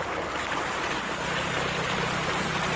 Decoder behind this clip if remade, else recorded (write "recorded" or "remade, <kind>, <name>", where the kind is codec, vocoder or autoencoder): recorded